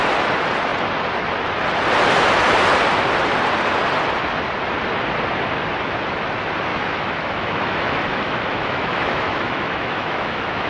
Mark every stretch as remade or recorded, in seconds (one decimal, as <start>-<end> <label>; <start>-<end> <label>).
0.0-6.7 recorded; 6.7-10.7 remade